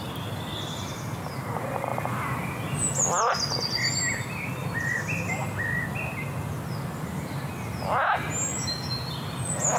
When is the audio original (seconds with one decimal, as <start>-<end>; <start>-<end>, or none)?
0.0-9.8